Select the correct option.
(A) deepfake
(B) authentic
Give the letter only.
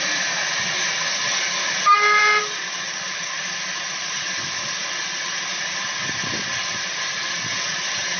B